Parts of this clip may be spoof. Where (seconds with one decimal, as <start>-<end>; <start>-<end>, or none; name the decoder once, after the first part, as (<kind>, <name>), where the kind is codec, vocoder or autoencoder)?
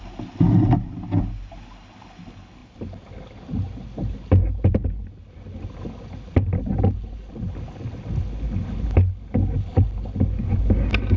none